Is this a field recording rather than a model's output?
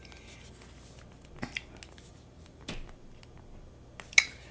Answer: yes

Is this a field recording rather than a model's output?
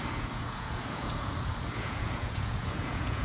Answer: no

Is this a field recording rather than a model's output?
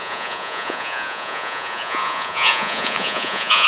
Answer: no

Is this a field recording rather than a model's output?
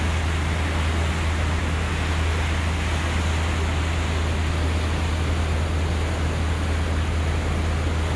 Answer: yes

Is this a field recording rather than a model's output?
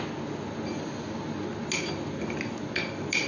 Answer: yes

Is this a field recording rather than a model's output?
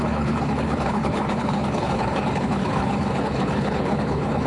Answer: no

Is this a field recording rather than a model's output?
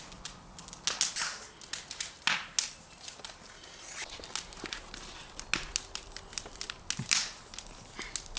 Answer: yes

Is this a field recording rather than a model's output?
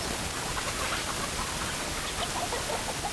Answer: yes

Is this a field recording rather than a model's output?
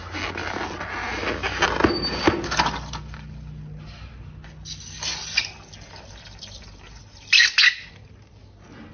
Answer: yes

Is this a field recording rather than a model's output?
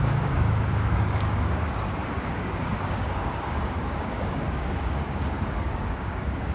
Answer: no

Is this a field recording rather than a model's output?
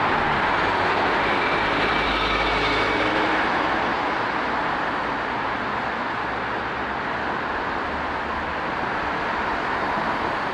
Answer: yes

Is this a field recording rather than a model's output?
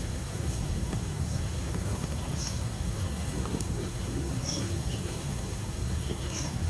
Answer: no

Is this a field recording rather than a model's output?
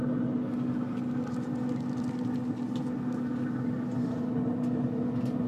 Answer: yes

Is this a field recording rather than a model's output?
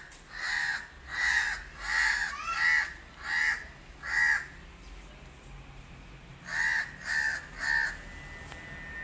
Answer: yes